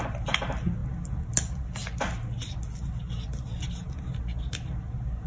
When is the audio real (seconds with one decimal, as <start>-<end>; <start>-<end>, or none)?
0.0-5.3